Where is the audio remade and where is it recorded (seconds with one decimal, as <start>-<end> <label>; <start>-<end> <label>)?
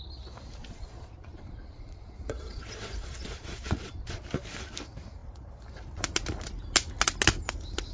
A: 0.0-0.6 recorded; 0.6-4.2 remade; 4.2-7.9 recorded